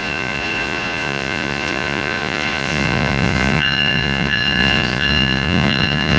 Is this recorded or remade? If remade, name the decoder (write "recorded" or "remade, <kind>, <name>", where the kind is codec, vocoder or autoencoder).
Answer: remade, vocoder, Vocos